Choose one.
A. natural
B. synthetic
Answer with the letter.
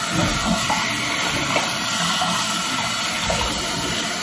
A